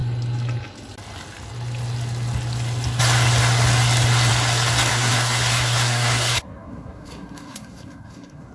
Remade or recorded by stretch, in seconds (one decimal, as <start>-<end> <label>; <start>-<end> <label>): 0.0-4.9 recorded; 4.9-8.5 remade